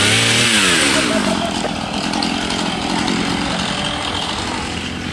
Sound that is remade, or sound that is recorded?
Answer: recorded